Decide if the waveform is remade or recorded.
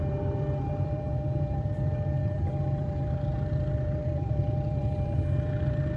remade